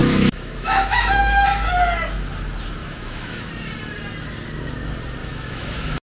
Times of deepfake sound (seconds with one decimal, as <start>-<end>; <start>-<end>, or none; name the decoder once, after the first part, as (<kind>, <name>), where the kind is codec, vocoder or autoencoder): 0.0-1.7 (autoencoder, DAC-VAE); 2.8-3.5; 5.2-6.0